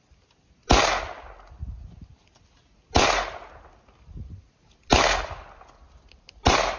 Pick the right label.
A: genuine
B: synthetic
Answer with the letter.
A